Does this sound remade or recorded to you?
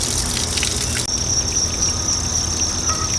recorded